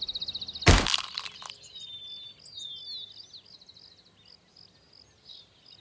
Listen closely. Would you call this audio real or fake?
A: real